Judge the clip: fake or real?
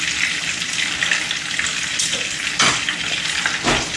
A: real